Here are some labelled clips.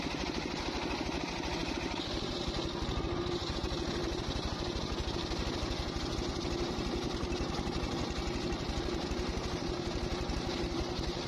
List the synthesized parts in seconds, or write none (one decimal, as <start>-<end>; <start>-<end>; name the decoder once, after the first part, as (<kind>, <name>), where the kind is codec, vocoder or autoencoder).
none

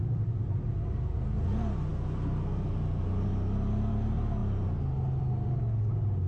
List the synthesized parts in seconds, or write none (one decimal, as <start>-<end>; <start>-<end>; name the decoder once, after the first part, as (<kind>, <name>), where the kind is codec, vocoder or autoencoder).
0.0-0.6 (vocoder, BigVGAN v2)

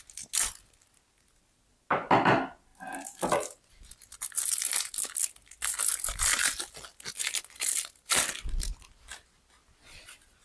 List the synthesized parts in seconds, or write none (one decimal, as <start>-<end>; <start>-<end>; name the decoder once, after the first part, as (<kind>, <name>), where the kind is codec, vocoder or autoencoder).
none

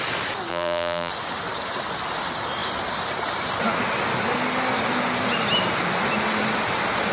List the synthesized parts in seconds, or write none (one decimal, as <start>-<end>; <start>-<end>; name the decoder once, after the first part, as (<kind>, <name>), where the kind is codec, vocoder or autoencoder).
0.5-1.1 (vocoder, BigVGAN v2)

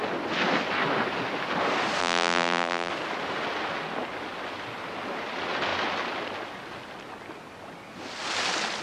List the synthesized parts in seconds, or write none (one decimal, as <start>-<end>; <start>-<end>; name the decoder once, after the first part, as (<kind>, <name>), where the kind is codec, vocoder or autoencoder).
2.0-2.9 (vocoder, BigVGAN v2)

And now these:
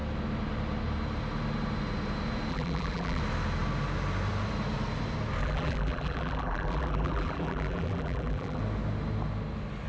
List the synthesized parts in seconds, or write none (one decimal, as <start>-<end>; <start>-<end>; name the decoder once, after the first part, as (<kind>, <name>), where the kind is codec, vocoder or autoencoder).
2.5-3.2 (vocoder, BigVGAN v2); 5.4-8.6